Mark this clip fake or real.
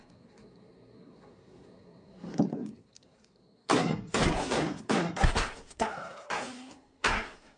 fake